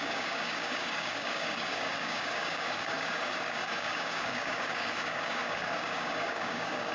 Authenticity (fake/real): fake